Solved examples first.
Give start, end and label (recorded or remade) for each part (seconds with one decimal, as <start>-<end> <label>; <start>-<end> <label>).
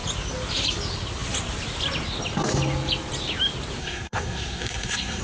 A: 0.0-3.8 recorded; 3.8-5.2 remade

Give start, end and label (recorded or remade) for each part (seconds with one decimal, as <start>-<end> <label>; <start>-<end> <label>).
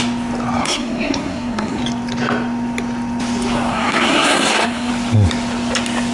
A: 0.0-0.6 recorded; 0.6-1.8 remade; 1.8-3.7 recorded; 3.7-4.9 remade; 4.9-6.1 recorded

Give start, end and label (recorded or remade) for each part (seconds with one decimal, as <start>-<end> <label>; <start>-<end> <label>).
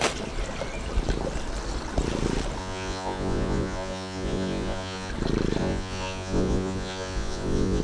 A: 0.0-2.6 recorded; 2.6-5.1 remade; 5.1-5.6 recorded; 5.6-7.8 remade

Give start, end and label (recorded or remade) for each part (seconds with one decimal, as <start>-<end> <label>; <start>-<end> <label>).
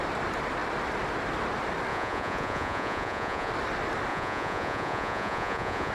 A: 0.0-1.9 recorded; 1.9-3.5 remade; 3.5-4.1 recorded; 4.1-5.9 remade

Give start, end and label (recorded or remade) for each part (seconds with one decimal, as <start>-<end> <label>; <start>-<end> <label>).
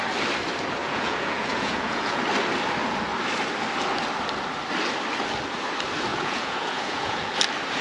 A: 0.0-0.8 recorded; 0.8-2.2 remade; 2.2-6.1 recorded; 6.1-7.3 remade; 7.3-7.8 recorded